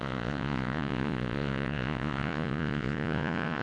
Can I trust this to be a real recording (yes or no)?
no